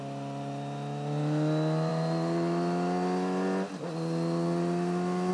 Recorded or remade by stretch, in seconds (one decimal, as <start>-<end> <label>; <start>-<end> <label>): 0.0-5.3 recorded